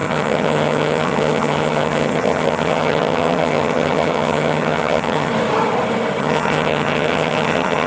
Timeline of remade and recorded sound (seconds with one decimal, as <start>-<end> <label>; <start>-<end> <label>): 0.0-5.3 remade; 5.3-6.2 recorded; 6.2-7.9 remade